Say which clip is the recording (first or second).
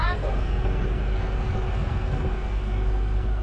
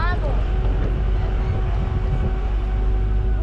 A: second